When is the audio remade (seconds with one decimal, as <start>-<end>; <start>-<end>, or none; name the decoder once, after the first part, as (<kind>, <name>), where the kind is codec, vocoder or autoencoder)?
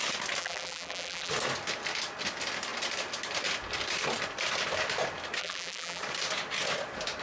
0.4-1.3 (vocoder, BigVGAN v2); 5.4-6.0